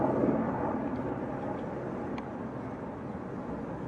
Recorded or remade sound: recorded